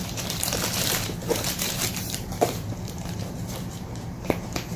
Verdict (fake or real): fake